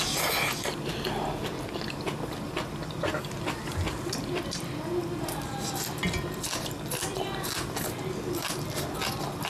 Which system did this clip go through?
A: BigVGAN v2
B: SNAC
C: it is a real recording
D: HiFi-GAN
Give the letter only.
C